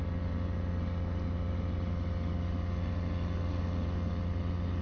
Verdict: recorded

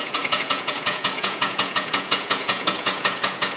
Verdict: remade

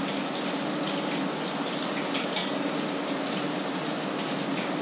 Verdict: recorded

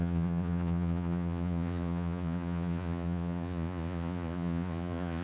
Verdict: remade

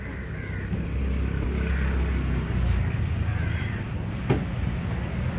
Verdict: recorded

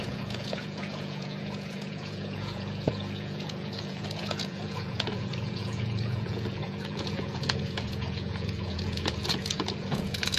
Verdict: remade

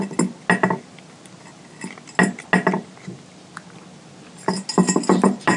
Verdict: recorded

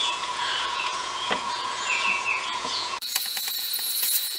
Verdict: remade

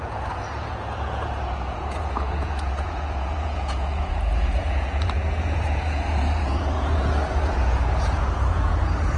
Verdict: remade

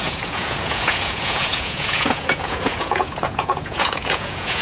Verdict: remade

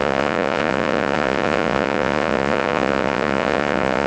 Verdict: remade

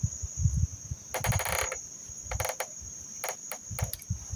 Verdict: recorded